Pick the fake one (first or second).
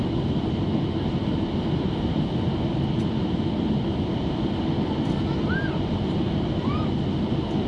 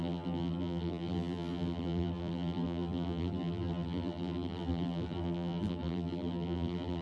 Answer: second